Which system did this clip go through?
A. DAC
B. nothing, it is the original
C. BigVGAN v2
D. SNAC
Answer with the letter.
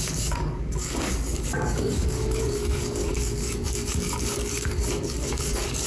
A